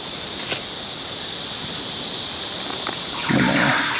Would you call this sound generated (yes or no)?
no